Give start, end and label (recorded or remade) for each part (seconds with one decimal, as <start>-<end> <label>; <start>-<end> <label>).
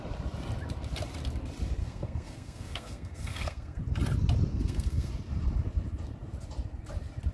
0.0-1.8 recorded; 1.8-3.8 remade; 3.8-4.5 recorded; 4.5-5.1 remade; 5.1-7.3 recorded